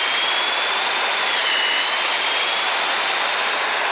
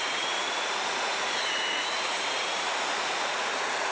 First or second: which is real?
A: first